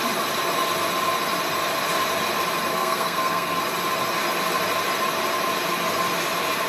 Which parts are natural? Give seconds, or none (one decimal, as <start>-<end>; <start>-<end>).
0.0-2.7; 3.6-6.7